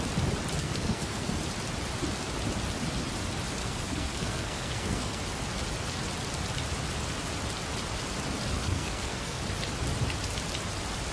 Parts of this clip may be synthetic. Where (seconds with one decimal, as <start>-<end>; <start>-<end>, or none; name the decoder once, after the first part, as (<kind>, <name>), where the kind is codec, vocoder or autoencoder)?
0.6-1.3 (codec, SNAC); 3.6-5.2; 8.6-9.4